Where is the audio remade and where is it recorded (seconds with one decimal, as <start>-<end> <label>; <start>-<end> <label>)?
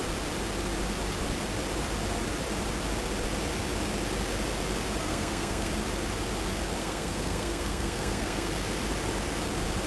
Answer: 0.0-5.1 recorded; 5.1-5.7 remade; 5.7-6.8 recorded; 6.8-8.5 remade; 8.5-9.9 recorded